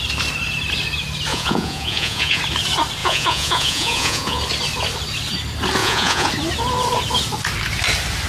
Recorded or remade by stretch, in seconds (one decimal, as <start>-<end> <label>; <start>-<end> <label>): 0.0-1.3 recorded; 1.3-2.4 remade; 2.4-3.0 recorded; 3.0-4.4 remade; 4.4-5.8 recorded; 5.8-6.3 remade; 6.3-8.3 recorded